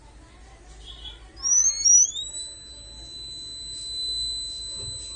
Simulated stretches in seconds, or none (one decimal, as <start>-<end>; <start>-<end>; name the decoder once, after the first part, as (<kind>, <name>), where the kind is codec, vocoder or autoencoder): none